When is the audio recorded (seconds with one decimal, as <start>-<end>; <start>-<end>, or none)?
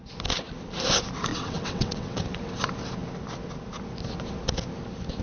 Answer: 0.0-1.3; 2.6-5.2